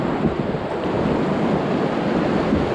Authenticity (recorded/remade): recorded